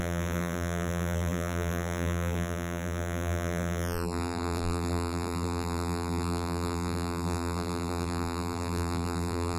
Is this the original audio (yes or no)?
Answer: no